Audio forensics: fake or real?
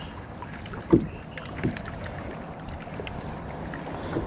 real